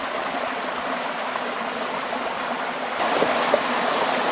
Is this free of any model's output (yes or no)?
yes